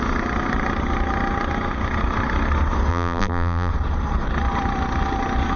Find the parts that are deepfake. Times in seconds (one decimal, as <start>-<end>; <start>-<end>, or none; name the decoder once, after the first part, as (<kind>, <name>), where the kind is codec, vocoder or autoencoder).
2.9-3.7 (vocoder, BigVGAN v2)